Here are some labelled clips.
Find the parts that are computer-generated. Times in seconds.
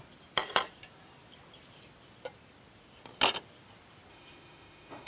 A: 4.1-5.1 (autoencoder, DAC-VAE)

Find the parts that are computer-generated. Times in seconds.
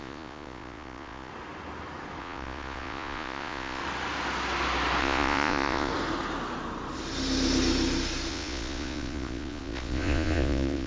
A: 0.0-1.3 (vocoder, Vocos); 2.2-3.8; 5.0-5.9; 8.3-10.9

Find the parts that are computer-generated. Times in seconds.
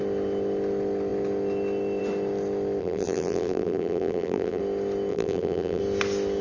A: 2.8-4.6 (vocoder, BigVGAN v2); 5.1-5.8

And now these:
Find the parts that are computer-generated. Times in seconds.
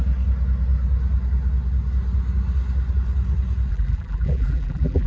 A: 3.7-5.1 (vocoder, BigVGAN v2)